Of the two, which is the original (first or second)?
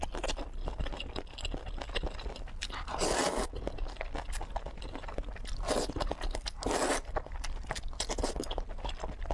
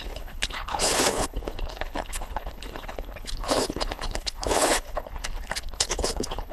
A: first